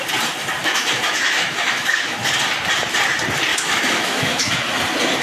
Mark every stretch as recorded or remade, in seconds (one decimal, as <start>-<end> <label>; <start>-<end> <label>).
0.0-0.6 recorded; 0.6-2.2 remade; 2.2-3.5 recorded; 3.5-4.5 remade; 4.5-5.2 recorded

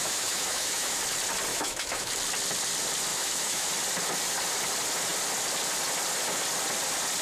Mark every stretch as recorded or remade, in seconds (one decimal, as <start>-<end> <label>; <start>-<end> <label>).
0.0-1.0 remade; 1.0-1.5 recorded; 1.5-2.1 remade; 2.1-3.1 recorded; 3.1-3.7 remade; 3.7-7.2 recorded

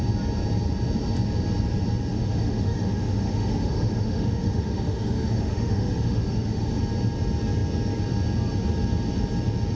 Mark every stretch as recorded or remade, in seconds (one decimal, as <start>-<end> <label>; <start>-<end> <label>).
0.0-2.1 recorded; 2.1-6.8 remade; 6.8-9.8 recorded

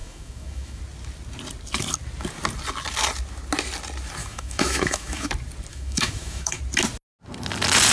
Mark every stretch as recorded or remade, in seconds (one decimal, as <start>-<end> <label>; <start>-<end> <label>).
0.0-0.8 remade; 0.8-4.2 recorded; 4.2-5.3 remade; 5.3-5.7 recorded; 5.7-6.6 remade; 6.6-7.9 recorded

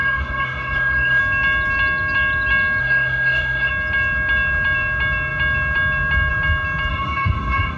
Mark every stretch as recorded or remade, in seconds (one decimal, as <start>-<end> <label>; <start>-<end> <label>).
0.0-1.2 remade; 1.2-2.8 recorded; 2.8-3.7 remade; 3.7-6.9 recorded; 6.9-7.8 remade

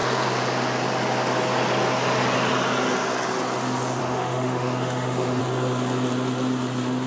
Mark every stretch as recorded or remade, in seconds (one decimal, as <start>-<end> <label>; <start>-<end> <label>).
0.0-4.0 recorded; 4.0-5.4 remade; 5.4-7.1 recorded